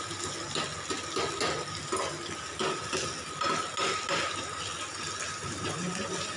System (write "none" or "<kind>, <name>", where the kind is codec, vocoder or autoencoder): none